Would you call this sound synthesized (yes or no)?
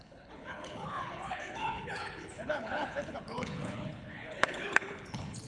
yes